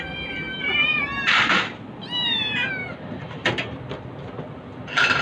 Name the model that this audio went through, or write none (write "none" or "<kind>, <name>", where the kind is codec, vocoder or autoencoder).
none